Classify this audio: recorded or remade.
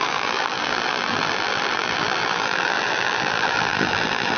remade